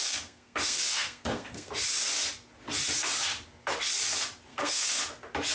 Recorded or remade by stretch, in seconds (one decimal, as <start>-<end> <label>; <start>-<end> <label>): 0.0-1.7 remade; 1.7-4.5 recorded; 4.5-5.0 remade; 5.0-5.5 recorded